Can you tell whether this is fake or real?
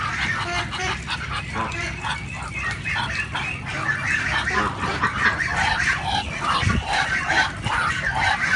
real